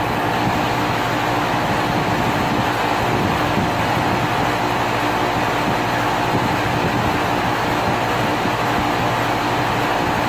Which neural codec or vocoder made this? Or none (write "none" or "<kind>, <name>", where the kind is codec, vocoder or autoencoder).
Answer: none